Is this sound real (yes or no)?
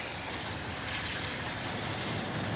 yes